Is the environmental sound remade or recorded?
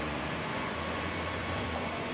remade